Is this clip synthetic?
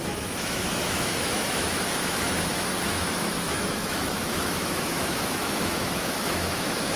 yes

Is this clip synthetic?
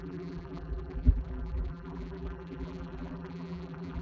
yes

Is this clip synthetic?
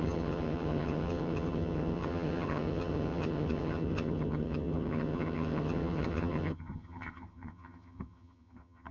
yes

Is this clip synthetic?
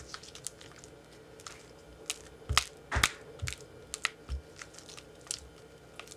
no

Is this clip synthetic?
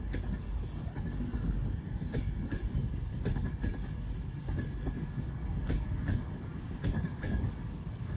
yes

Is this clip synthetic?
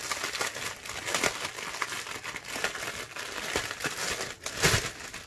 no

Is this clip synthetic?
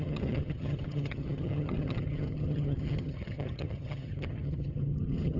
yes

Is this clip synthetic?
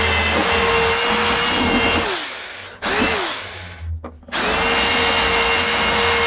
no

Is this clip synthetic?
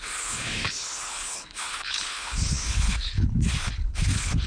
yes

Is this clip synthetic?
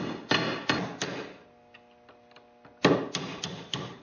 no